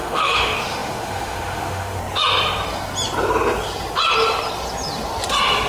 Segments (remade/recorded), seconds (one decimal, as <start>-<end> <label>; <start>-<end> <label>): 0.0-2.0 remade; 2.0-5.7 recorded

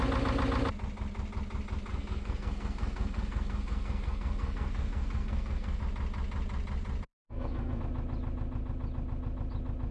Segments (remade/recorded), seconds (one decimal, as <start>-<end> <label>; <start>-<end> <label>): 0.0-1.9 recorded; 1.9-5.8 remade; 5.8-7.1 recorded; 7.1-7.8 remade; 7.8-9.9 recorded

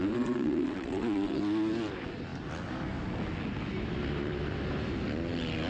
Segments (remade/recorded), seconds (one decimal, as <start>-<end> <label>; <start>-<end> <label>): 0.0-1.4 remade; 1.4-5.7 recorded

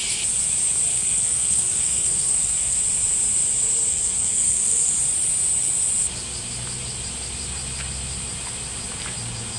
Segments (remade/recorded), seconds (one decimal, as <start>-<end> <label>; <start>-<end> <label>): 0.0-0.9 recorded; 0.9-2.8 remade; 2.8-3.9 recorded; 3.9-4.9 remade; 4.9-9.6 recorded

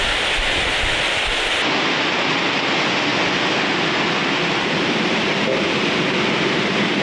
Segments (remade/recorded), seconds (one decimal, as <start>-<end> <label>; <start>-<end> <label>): 0.0-7.0 recorded

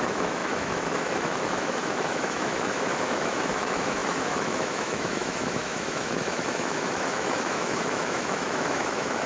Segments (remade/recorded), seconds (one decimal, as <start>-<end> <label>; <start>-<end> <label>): 0.0-9.3 remade